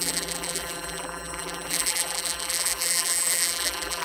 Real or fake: fake